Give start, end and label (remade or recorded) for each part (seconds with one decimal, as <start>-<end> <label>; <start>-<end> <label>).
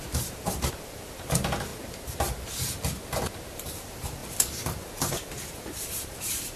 0.0-1.7 remade; 1.7-3.5 recorded; 3.5-6.6 remade